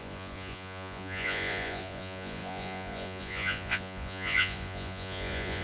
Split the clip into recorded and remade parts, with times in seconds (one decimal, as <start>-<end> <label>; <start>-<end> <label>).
0.0-5.6 remade